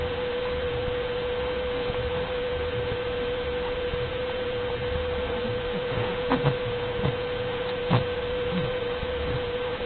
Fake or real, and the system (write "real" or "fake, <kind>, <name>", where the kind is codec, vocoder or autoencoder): fake, vocoder, Vocos